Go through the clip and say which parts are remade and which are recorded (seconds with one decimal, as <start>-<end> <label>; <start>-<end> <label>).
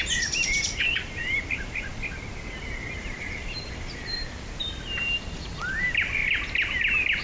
0.0-1.9 remade; 1.9-3.0 recorded; 3.0-6.2 remade; 6.2-7.2 recorded